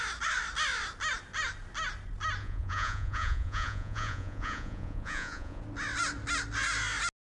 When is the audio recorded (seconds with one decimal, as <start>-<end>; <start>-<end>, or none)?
0.0-2.4; 5.6-7.2